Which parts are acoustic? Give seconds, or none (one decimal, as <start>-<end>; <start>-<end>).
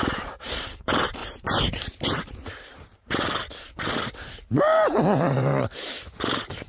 none